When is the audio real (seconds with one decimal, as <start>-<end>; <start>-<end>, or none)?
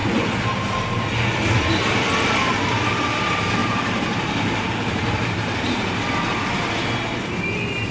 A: 0.0-3.6; 6.1-7.9